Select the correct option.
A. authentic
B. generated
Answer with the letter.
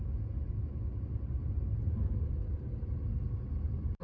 A